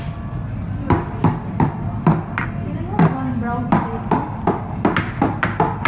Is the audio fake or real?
real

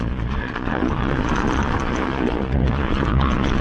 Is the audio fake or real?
fake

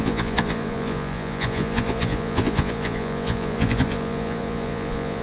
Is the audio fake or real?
fake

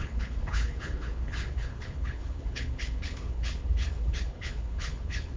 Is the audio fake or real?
fake